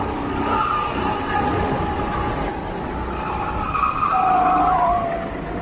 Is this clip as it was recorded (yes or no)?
yes